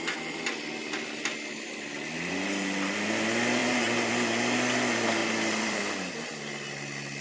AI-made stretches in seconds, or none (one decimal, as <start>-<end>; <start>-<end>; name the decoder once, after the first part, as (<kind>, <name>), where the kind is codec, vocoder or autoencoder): 3.6-4.1 (vocoder, BigVGAN v2); 5.2-5.8